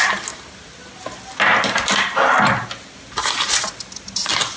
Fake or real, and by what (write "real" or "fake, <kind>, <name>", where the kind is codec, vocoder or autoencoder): real